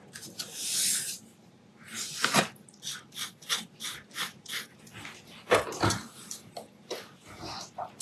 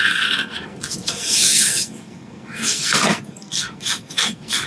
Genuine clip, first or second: first